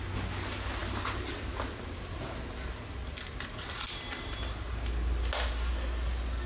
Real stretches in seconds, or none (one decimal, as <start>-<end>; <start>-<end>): 0.0-6.5